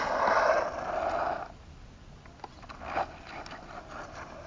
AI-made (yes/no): no